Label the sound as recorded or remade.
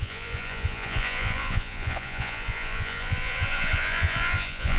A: remade